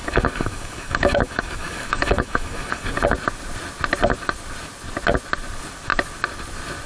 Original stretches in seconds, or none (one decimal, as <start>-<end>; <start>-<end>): 3.0-6.9

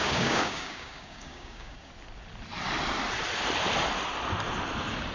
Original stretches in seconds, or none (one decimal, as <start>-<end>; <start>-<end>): 1.9-5.1